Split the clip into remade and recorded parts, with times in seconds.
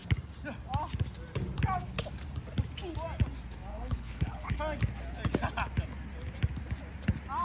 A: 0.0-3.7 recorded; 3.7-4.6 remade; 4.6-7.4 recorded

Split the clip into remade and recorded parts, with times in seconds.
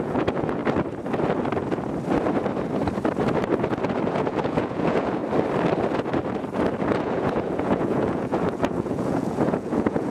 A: 0.0-0.6 remade; 0.6-4.1 recorded; 4.1-5.2 remade; 5.2-6.9 recorded; 6.9-10.1 remade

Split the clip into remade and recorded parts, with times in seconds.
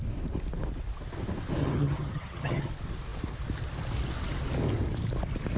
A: 0.0-1.6 recorded; 1.6-2.7 remade; 2.7-5.6 recorded